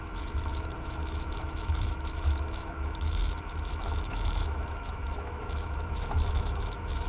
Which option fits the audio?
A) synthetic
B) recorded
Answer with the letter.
A